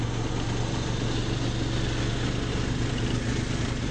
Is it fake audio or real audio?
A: real